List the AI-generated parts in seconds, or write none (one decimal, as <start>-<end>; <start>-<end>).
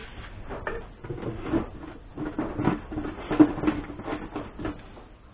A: none